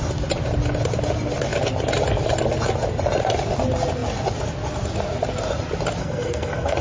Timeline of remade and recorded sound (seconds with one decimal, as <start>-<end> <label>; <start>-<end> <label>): 0.0-6.0 recorded; 6.0-6.8 remade